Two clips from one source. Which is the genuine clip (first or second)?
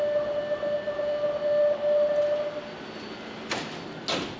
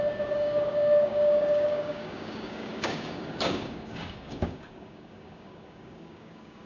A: first